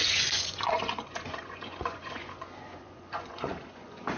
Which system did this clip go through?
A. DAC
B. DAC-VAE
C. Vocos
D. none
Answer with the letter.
C